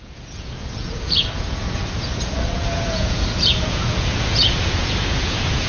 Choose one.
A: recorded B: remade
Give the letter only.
B